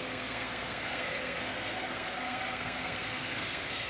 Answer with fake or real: fake